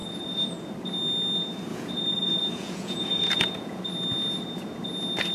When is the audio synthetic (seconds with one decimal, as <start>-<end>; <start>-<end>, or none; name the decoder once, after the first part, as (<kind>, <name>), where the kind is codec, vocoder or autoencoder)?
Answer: 0.0-0.7 (vocoder, Vocos); 1.7-3.8